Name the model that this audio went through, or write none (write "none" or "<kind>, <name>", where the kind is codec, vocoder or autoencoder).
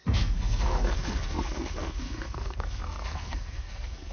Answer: codec, SNAC